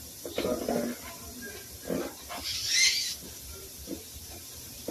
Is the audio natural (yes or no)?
yes